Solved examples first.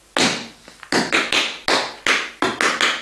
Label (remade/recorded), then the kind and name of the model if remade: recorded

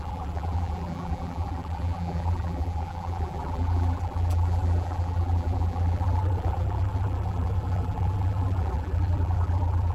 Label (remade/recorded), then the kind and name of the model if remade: remade, vocoder, BigVGAN v2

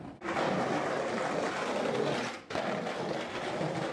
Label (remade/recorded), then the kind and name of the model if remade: recorded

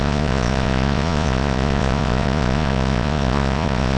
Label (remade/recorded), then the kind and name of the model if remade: remade, vocoder, Vocos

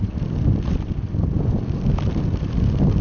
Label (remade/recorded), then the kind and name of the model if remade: recorded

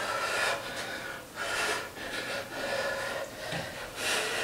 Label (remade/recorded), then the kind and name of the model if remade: recorded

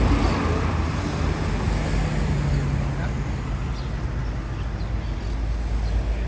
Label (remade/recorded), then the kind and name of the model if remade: recorded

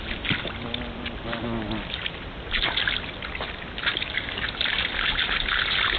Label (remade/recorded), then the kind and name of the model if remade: recorded